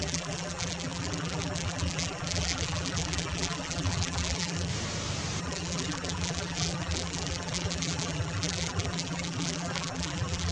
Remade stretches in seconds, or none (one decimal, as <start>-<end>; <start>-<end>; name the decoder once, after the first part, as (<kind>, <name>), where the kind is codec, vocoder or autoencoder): 0.0-4.7 (vocoder, BigVGAN v2); 5.4-10.5